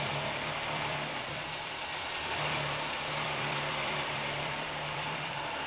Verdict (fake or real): fake